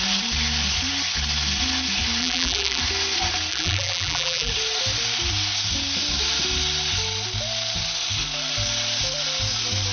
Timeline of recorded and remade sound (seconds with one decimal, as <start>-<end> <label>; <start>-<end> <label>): 0.0-2.2 recorded; 2.2-2.8 remade; 2.8-3.5 recorded; 3.5-4.5 remade; 4.5-9.9 recorded